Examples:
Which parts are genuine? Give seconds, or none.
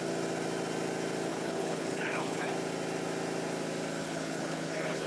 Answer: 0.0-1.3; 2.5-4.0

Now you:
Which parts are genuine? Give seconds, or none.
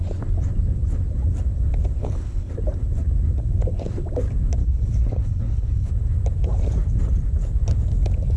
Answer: 0.0-2.0; 2.5-4.6; 5.9-8.4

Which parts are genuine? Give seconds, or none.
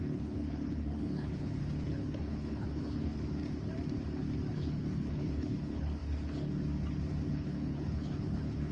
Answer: 3.4-4.5; 6.0-7.3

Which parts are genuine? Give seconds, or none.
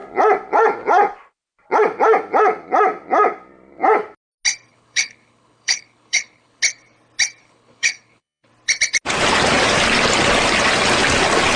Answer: 0.0-4.7; 6.6-7.4; 8.5-11.6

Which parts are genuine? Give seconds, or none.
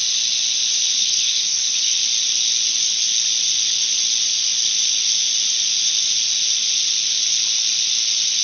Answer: 0.0-1.0; 2.0-8.4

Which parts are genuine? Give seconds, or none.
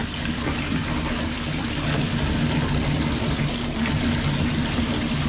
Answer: 0.0-5.3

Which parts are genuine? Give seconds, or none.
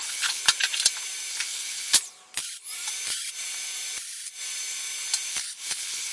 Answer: 0.4-1.3; 1.9-5.3